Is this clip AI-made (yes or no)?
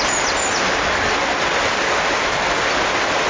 no